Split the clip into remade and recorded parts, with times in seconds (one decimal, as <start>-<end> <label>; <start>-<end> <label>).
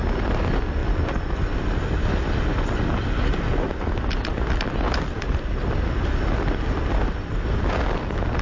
0.0-8.4 recorded